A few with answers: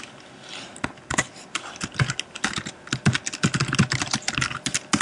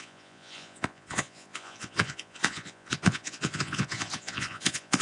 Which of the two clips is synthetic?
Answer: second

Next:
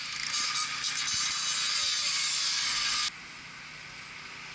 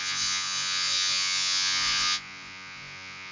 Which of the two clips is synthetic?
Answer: second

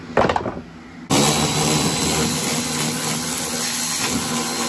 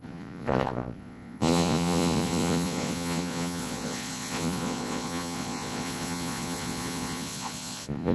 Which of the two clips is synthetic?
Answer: second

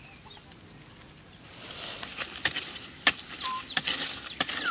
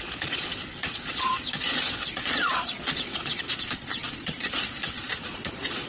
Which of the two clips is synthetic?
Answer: second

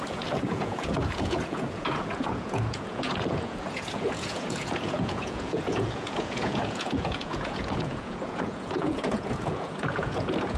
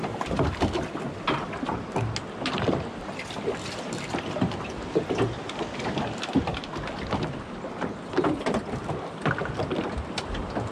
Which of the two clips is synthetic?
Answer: first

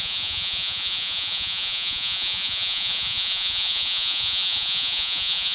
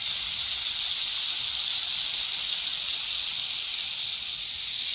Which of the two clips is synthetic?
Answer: first